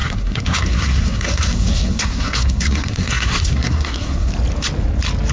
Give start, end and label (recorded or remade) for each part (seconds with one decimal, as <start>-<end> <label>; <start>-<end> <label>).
0.0-4.3 remade; 4.3-5.3 recorded